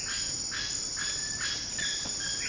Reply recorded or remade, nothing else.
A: recorded